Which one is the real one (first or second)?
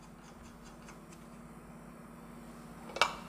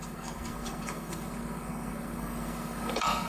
first